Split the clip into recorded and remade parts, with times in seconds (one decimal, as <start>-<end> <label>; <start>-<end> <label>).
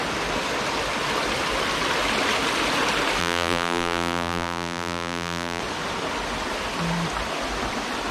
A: 0.0-3.2 recorded; 3.2-5.6 remade; 5.6-8.1 recorded